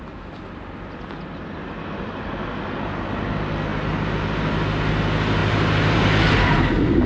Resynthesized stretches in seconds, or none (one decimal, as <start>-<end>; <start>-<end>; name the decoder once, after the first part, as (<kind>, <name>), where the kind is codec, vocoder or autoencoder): none